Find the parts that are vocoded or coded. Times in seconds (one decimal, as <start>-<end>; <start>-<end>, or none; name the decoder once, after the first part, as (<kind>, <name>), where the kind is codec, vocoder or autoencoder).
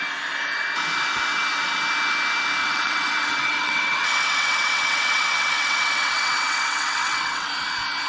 2.6-7.5 (vocoder, WaveNeXt)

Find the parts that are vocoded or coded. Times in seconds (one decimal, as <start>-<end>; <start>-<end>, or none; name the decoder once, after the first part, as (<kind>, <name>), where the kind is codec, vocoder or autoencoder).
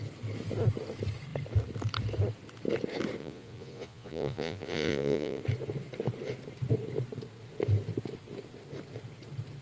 3.2-5.4 (vocoder, Vocos)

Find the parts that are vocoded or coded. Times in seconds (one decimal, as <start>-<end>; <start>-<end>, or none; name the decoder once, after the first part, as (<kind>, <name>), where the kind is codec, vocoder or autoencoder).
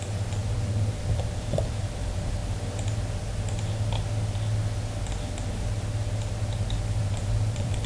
0.0-2.4 (vocoder, BigVGAN v2); 7.0-7.9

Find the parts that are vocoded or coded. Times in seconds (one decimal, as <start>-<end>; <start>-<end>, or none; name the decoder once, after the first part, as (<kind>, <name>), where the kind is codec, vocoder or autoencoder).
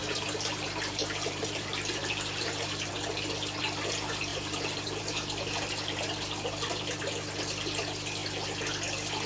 0.0-2.9 (vocoder, BigVGAN v2); 4.3-5.0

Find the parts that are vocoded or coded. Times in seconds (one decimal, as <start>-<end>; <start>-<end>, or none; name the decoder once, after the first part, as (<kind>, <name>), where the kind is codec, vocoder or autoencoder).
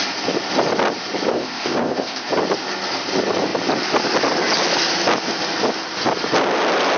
1.3-2.3 (codec, ZipCodec)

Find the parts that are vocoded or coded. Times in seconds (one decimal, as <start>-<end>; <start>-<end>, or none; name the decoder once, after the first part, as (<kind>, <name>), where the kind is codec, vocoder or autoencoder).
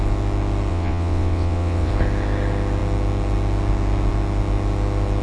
0.7-1.9 (vocoder, WaveNeXt)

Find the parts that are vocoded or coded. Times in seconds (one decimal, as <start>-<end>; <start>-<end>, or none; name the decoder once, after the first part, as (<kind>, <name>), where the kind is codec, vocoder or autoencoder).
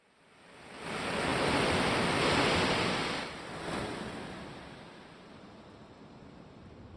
none